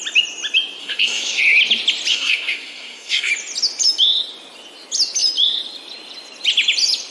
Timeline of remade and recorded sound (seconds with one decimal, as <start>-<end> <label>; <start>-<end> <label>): 0.0-0.8 recorded; 0.8-1.4 remade; 1.4-2.1 recorded; 2.1-3.3 remade; 3.3-7.1 recorded